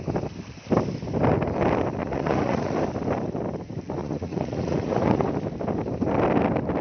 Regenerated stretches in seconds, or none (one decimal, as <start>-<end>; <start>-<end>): 2.0-2.8; 4.0-5.3